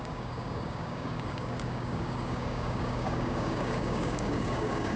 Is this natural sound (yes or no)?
no